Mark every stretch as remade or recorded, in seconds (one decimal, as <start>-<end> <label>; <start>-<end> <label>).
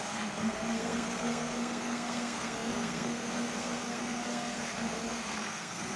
0.0-6.0 remade